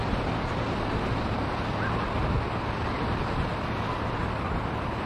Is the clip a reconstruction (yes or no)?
no